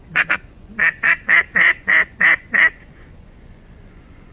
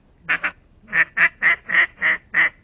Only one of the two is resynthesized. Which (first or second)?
first